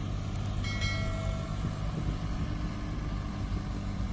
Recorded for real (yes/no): yes